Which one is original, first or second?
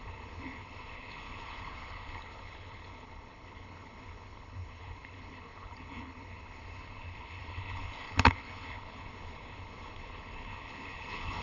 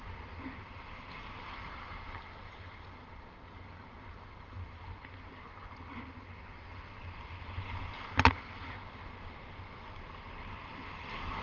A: second